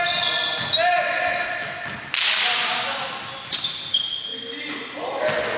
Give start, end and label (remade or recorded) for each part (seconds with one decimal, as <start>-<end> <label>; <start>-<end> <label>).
0.0-5.6 recorded